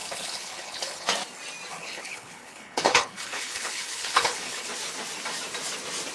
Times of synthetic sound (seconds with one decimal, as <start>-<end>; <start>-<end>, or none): 0.0-1.1; 1.7-4.7

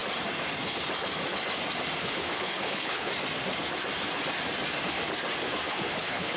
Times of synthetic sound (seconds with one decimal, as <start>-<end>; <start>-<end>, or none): 2.0-3.1; 5.7-6.4

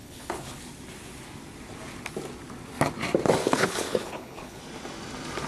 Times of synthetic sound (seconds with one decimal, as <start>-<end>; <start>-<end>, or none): 0.0-0.6; 3.4-4.6

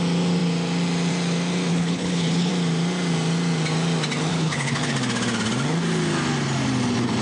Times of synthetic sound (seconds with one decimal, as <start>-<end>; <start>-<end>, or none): 1.7-2.5; 4.3-4.9

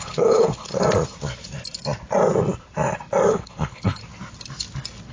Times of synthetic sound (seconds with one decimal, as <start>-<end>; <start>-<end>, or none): 0.0-0.7; 3.3-4.0

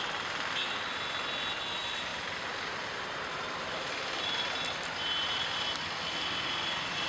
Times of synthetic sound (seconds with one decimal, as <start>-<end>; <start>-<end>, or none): none

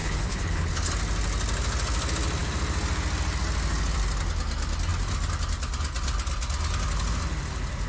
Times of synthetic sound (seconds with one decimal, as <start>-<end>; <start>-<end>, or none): 0.0-0.9